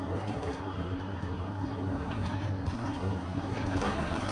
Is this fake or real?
fake